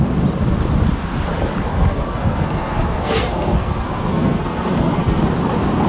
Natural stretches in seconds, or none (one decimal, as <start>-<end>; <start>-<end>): 0.0-1.7; 5.2-5.9